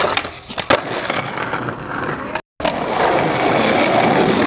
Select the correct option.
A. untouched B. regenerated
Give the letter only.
A